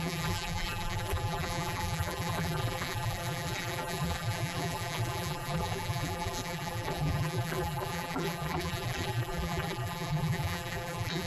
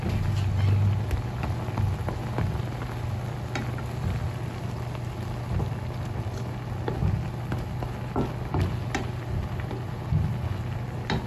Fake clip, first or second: first